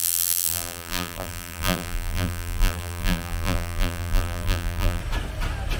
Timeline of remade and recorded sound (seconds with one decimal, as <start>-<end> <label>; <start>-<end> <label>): 0.0-5.0 remade; 5.0-5.8 recorded